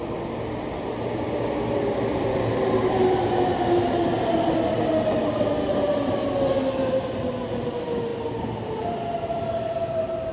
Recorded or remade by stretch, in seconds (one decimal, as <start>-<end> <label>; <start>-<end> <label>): 0.0-10.3 recorded